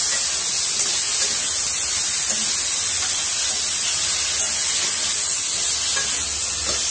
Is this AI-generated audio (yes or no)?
no